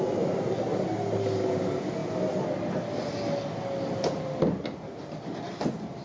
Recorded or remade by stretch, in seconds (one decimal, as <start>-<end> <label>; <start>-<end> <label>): 0.0-6.0 recorded